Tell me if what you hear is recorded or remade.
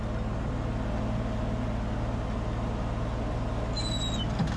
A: recorded